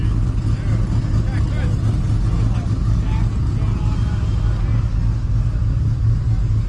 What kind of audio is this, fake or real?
real